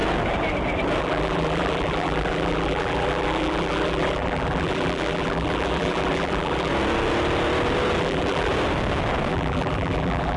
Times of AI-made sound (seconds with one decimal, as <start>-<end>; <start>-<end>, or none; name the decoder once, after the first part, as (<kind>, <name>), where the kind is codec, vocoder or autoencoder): 1.0-6.7 (vocoder, BigVGAN v2); 8.0-8.5; 9.3-10.4